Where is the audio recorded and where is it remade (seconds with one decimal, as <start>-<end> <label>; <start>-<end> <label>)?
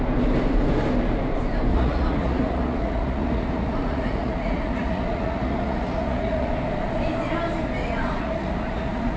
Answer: 0.0-1.7 recorded; 1.7-6.5 remade; 6.5-7.8 recorded; 7.8-9.2 remade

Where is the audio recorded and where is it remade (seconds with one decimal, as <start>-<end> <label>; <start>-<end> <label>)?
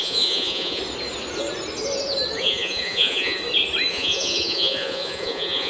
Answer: 0.0-0.8 remade; 0.8-2.4 recorded; 2.4-3.4 remade; 3.4-3.9 recorded; 3.9-5.7 remade